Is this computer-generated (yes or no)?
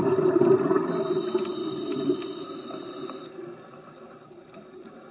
no